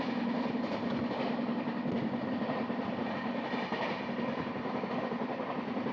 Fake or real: real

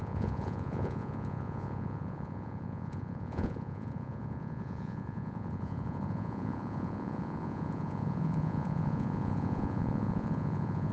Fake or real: fake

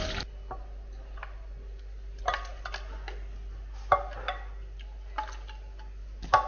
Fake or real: real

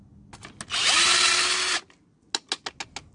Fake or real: real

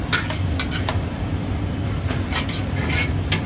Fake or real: real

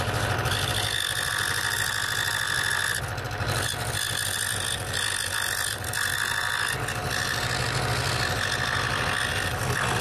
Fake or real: real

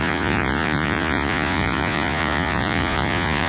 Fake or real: fake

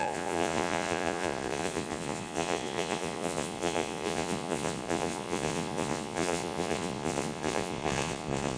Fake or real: fake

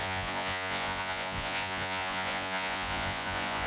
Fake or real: fake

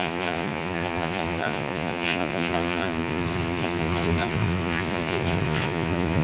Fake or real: fake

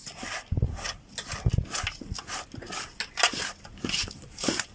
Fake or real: real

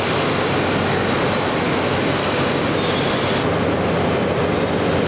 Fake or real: real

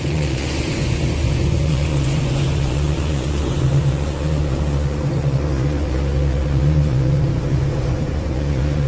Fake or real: fake